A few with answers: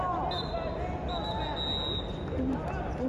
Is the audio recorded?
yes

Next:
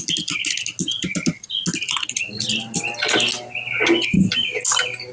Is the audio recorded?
yes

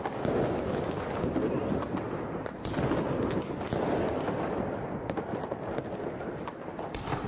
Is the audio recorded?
yes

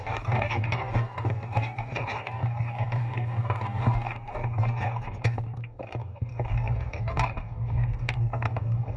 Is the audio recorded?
no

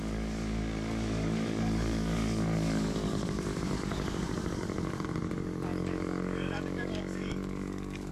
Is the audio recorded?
no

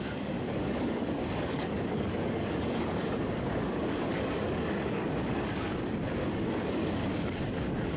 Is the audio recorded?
no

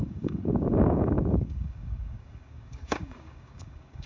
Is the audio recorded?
no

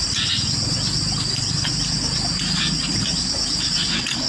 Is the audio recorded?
yes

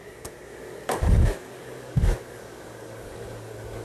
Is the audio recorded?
no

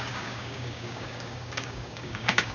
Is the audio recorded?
no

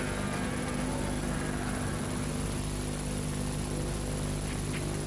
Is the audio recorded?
yes